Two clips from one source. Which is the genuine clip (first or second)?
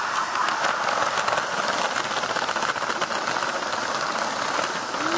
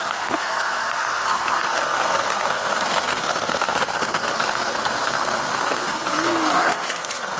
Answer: first